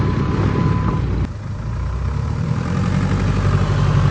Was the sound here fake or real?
real